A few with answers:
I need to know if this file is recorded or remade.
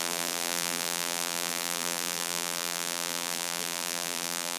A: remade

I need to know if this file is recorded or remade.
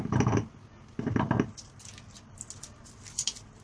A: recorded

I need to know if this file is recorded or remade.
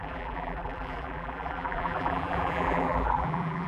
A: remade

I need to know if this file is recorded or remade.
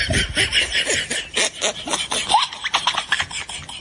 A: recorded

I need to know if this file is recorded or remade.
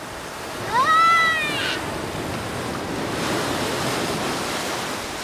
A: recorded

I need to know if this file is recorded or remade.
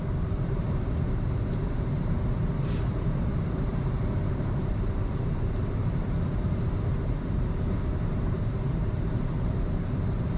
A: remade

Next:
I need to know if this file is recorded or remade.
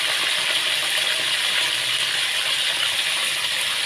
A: recorded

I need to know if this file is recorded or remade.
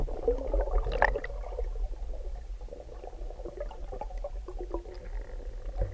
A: recorded